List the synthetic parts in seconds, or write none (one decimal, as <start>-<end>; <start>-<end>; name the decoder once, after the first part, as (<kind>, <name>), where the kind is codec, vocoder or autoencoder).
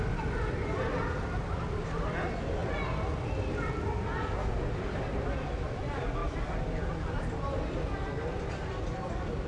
none